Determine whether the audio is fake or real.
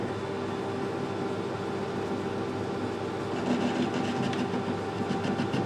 real